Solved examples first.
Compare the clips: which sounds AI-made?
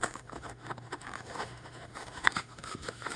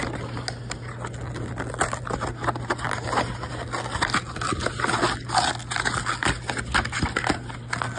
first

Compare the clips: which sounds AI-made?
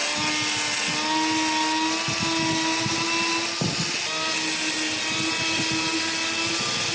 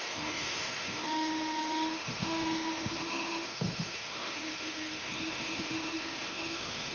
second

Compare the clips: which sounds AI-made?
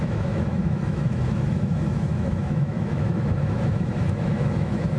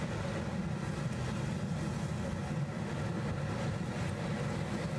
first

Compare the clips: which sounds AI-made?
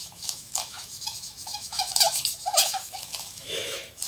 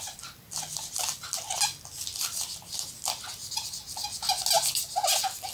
first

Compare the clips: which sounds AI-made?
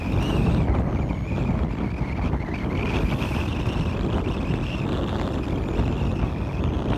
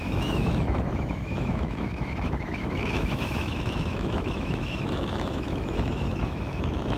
second